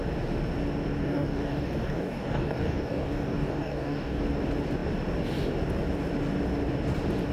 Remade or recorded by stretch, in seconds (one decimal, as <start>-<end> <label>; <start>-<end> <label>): 0.0-1.0 recorded; 1.0-4.2 remade; 4.2-7.3 recorded